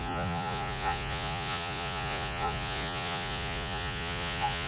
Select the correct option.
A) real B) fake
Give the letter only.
B